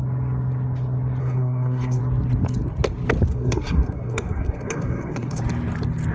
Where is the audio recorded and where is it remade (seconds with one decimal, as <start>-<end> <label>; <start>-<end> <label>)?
0.0-1.2 recorded; 1.2-2.0 remade; 2.0-3.3 recorded; 3.3-5.4 remade; 5.4-6.1 recorded